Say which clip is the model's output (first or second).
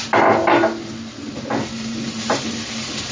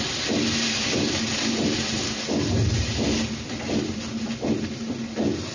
second